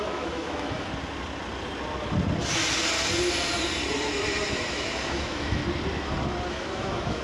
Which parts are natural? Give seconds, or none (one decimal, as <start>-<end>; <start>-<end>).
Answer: 0.9-4.5; 5.6-6.5